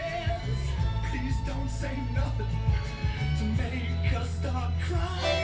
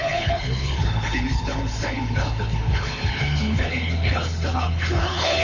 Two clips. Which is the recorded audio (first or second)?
first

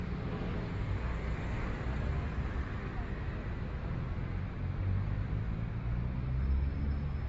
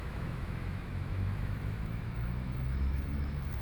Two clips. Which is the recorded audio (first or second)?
first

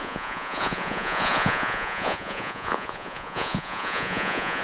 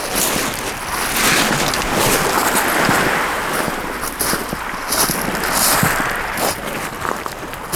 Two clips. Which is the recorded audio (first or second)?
second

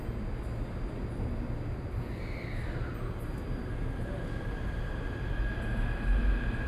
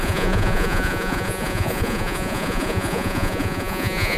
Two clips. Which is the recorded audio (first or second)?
first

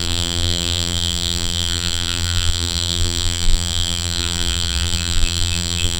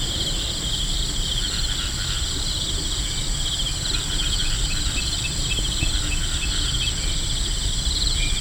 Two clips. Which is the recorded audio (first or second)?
second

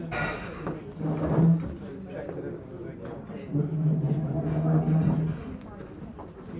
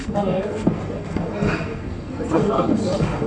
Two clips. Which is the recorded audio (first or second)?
first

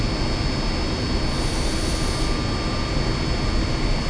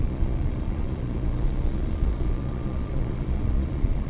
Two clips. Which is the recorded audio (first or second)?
first